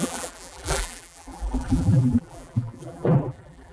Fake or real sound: fake